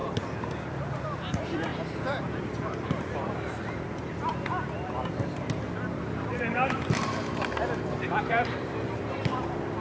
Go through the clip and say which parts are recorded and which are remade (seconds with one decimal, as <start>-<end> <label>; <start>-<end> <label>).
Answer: 0.0-0.5 recorded; 0.5-1.7 remade; 1.7-2.2 recorded; 2.2-4.3 remade; 4.3-5.7 recorded; 5.7-9.8 remade